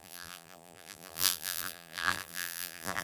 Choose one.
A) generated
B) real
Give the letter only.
A